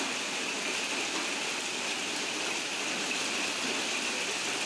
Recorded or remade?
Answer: recorded